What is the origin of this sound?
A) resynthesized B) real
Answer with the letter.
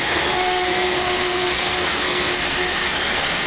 A